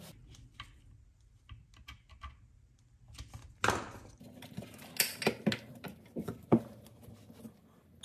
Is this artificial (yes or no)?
no